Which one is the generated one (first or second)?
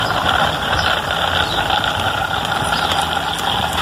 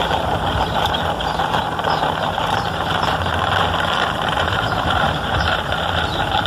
second